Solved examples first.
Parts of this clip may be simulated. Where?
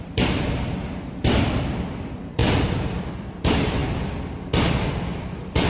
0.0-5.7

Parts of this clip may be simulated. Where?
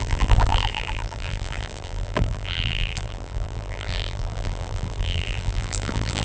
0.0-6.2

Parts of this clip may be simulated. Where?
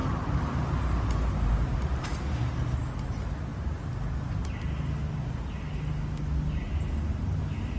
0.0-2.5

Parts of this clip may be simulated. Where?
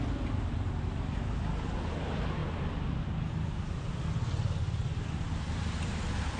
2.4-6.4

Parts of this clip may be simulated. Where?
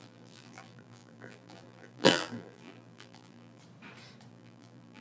0.0-3.6; 4.3-5.0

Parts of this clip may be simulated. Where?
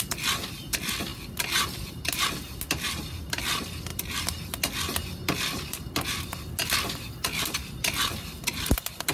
none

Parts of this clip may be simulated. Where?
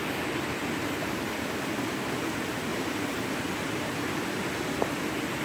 2.7-3.8